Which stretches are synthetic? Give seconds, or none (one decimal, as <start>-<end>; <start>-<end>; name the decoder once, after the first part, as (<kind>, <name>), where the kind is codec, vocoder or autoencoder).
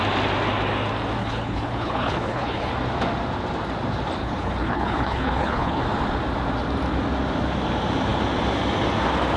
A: 1.2-2.7 (codec, HILCodec); 4.2-5.8